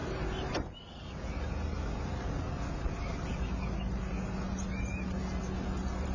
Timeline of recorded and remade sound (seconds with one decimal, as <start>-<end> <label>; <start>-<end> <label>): 0.0-6.1 recorded